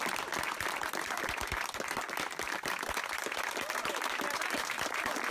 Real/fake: fake